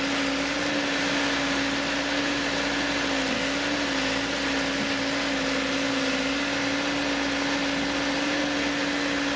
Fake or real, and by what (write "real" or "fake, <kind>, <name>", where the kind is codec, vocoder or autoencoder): real